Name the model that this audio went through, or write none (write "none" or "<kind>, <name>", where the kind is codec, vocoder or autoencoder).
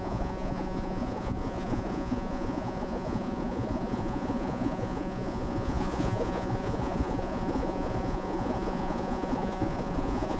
vocoder, Vocos